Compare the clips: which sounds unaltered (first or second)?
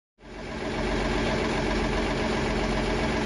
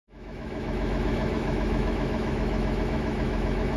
first